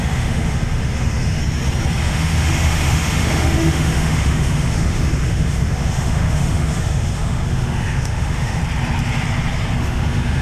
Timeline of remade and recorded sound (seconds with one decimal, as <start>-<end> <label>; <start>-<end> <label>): 0.0-1.4 remade; 1.4-2.0 recorded; 2.0-8.6 remade; 8.6-9.8 recorded; 9.8-10.4 remade